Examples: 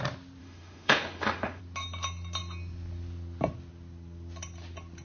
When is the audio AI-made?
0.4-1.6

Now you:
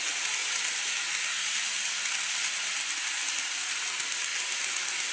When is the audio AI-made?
none